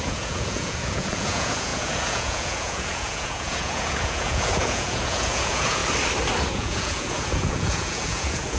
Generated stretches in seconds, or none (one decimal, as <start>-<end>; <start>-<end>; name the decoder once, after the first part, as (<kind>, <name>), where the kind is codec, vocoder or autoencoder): 0.0-5.8 (vocoder, Vocos); 6.5-8.6